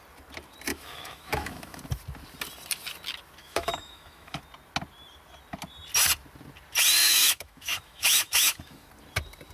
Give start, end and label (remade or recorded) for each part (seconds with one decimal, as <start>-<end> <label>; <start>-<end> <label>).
0.0-0.7 recorded; 0.7-1.8 remade; 1.8-3.4 recorded; 3.4-4.4 remade; 4.4-7.0 recorded; 7.0-8.9 remade; 8.9-9.5 recorded